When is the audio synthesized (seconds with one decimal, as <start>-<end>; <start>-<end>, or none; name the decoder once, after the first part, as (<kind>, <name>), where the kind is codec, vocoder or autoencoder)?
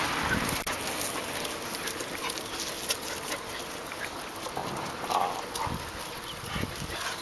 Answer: none